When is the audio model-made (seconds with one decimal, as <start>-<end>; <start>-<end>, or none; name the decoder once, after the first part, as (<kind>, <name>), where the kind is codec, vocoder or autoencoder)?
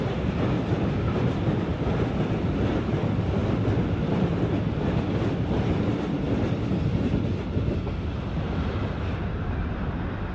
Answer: 0.7-1.9 (vocoder, BigVGAN v2)